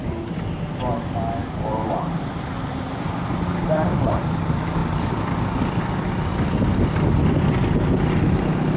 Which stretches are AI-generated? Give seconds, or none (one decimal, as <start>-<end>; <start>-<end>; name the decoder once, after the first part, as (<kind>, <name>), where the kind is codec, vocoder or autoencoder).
none